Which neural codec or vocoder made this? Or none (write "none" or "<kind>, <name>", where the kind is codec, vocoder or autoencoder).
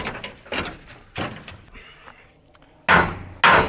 none